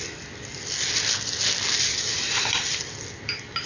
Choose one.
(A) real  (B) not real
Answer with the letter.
A